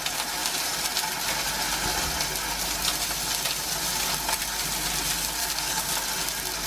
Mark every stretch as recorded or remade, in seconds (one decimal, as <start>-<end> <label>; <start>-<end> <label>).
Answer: 0.0-5.4 recorded; 5.4-5.9 remade; 5.9-6.7 recorded